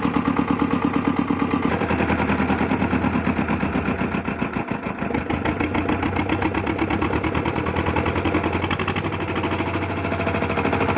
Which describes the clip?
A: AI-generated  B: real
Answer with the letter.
B